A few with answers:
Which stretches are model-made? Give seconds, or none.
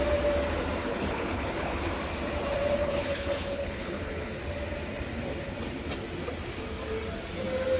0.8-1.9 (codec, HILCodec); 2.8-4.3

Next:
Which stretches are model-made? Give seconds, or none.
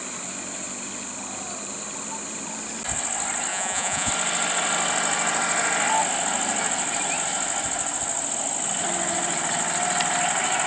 3.5-4.1 (vocoder, Vocos)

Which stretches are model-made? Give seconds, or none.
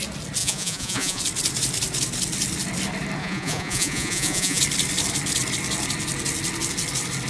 0.4-1.2 (vocoder, Vocos); 3.2-4.6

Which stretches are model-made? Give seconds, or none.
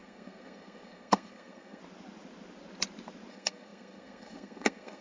0.0-1.8 (codec, SNAC); 3.3-5.0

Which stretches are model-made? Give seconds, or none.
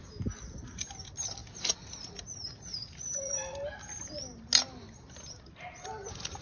none